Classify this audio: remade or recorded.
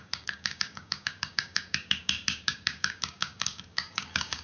remade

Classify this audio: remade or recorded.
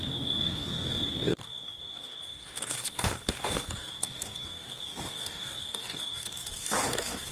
remade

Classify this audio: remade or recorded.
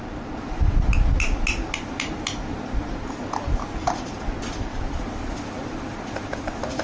recorded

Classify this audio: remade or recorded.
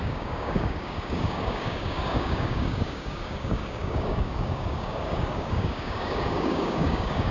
remade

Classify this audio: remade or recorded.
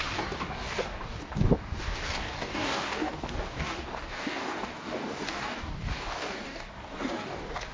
remade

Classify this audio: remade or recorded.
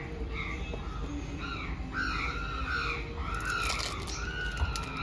recorded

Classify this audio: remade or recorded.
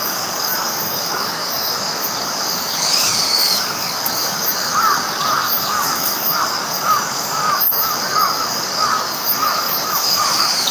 remade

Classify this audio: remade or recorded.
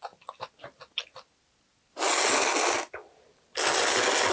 recorded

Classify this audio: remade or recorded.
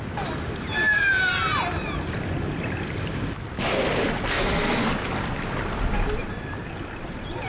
recorded